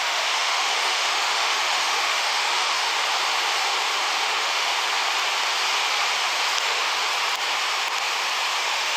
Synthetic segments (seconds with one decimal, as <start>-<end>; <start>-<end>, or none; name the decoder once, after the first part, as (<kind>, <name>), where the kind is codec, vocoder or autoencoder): 0.0-2.9 (autoencoder, DAC-VAE); 4.1-4.7; 6.6-7.1; 8.6-9.0

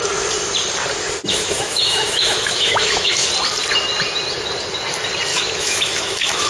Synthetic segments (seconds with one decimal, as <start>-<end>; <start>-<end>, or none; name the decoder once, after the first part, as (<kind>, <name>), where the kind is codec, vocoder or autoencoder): 1.3-3.3 (autoencoder, DAC-VAE); 5.3-6.5

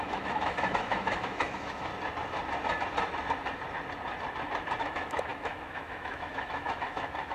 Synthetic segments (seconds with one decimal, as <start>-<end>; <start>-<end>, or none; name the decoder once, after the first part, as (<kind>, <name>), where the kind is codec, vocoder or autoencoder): 0.0-1.9 (autoencoder, DAC-VAE); 4.8-7.3